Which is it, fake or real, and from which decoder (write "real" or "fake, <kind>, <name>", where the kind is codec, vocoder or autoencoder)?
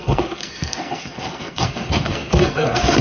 fake, codec, SNAC